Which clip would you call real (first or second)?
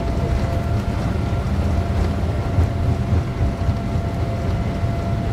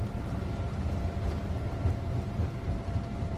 first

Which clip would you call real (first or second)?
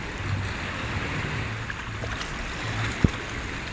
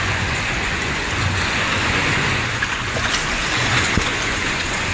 first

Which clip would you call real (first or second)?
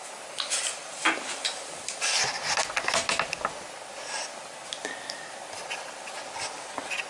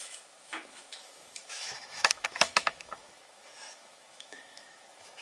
first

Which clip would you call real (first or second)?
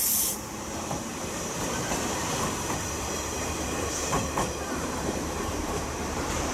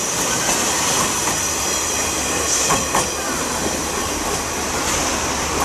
second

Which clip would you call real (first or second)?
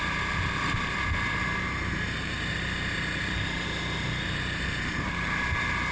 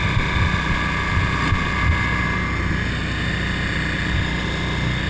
second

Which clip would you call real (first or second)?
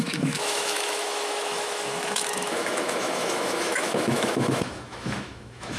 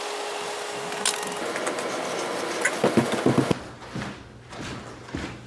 second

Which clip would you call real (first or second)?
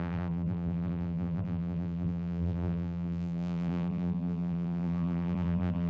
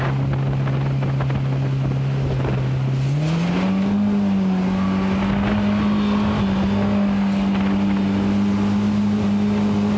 second